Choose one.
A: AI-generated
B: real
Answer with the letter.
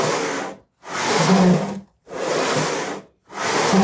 B